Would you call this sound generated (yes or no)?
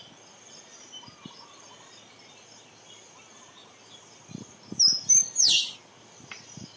no